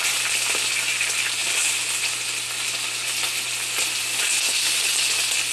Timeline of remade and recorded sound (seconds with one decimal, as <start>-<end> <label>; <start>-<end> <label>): 0.0-5.5 recorded